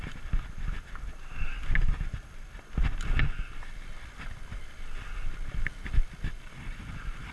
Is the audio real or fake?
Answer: real